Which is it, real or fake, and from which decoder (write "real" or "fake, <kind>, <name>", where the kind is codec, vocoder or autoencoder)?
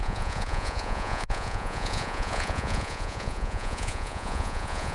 fake, vocoder, Vocos